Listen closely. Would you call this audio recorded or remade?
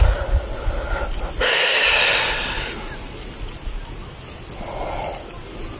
recorded